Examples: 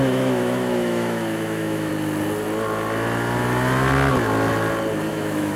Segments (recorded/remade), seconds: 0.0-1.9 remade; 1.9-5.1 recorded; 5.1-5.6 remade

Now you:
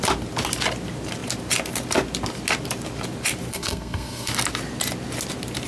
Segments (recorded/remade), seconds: 0.0-3.5 recorded; 3.5-4.3 remade; 4.3-5.7 recorded

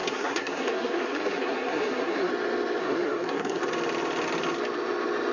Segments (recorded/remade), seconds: 0.0-2.3 remade; 2.3-2.8 recorded; 2.8-3.6 remade; 3.6-5.3 recorded